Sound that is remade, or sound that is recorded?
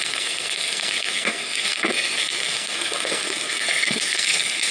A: remade